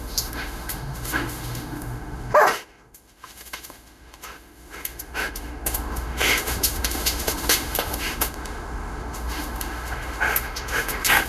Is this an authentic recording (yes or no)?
no